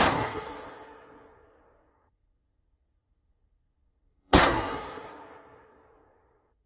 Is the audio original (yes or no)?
no